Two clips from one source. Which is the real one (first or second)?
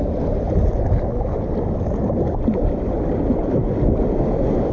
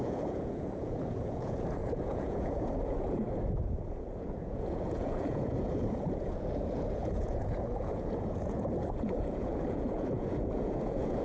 first